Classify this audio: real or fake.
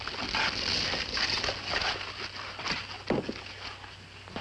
real